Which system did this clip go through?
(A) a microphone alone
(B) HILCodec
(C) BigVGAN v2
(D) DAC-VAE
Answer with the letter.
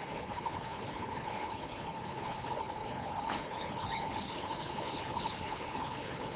B